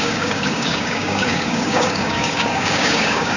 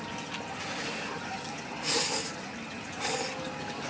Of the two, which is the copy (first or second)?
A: first